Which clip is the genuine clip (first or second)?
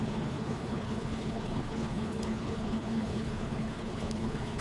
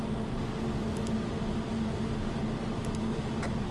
second